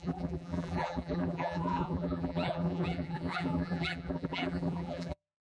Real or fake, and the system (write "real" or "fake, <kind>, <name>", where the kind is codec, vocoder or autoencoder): fake, vocoder, BigVGAN v2